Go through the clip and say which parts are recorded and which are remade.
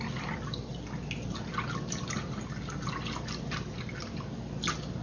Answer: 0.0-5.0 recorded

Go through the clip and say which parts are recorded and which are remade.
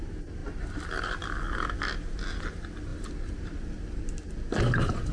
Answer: 0.0-5.1 recorded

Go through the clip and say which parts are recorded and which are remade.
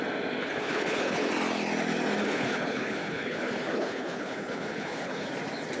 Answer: 0.0-0.4 recorded; 0.4-1.3 remade; 1.3-2.2 recorded; 2.2-5.3 remade; 5.3-5.8 recorded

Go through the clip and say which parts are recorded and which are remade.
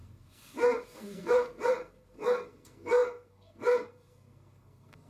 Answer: 0.0-5.1 remade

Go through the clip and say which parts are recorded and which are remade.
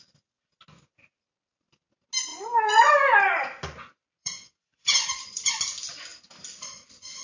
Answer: 0.0-2.3 recorded; 2.3-2.9 remade; 2.9-4.2 recorded; 4.2-5.6 remade; 5.6-7.2 recorded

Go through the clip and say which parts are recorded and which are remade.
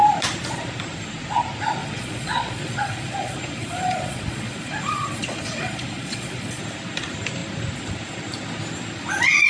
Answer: 0.0-1.8 recorded; 1.8-6.6 remade; 6.6-9.5 recorded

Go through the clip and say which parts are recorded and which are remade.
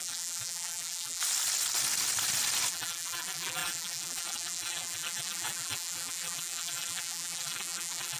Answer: 0.0-1.2 remade; 1.2-2.7 recorded; 2.7-8.2 remade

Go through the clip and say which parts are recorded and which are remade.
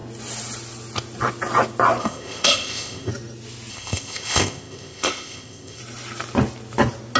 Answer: 0.0-2.0 recorded; 2.0-3.1 remade; 3.1-3.7 recorded; 3.7-5.8 remade; 5.8-7.2 recorded